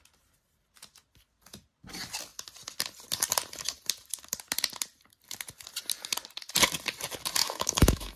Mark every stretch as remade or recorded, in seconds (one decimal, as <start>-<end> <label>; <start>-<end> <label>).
0.0-7.4 recorded; 7.4-8.2 remade